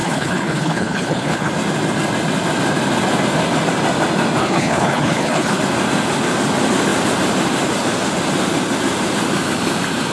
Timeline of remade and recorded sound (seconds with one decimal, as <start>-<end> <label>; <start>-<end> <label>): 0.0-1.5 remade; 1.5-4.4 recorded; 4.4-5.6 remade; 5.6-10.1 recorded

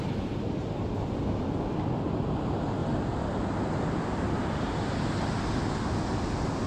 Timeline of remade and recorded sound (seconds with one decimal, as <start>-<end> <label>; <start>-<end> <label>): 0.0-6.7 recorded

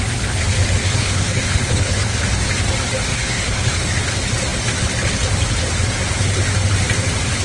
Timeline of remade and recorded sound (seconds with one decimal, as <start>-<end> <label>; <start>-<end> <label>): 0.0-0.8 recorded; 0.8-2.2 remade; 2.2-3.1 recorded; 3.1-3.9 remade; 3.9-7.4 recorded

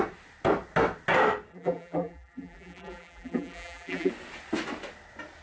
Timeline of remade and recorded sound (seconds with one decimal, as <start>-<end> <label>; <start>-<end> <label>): 0.0-1.5 recorded; 1.5-4.1 remade; 4.1-5.4 recorded

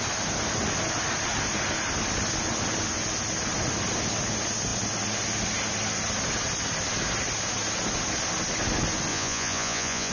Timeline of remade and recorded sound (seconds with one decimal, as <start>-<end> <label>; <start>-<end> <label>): 0.0-9.1 recorded; 9.1-10.1 remade